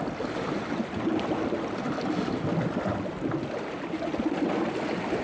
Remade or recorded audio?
recorded